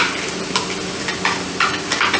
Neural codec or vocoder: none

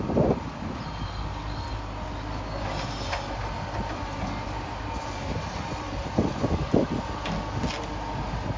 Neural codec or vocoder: none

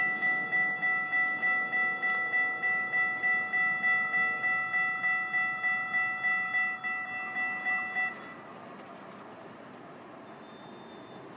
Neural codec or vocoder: none